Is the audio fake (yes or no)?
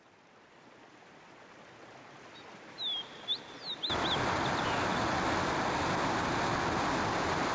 no